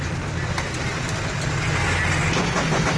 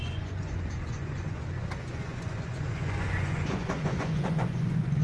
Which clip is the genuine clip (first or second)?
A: first